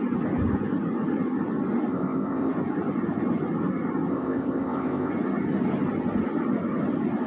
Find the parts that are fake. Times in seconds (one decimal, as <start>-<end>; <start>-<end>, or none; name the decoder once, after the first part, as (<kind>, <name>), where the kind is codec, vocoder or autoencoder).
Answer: 1.9-2.5 (codec, ZipCodec); 4.1-5.1